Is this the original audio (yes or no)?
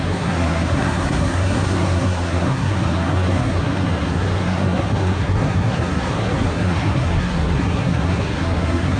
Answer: no